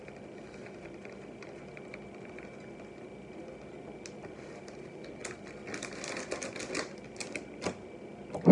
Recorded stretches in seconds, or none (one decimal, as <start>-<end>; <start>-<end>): 0.0-8.5